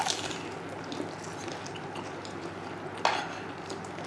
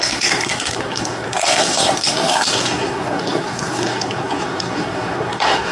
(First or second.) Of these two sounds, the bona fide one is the first